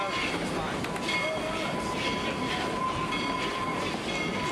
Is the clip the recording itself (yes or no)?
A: yes